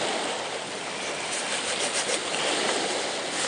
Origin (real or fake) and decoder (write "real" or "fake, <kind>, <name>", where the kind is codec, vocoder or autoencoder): real